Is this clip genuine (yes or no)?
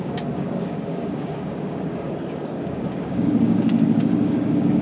no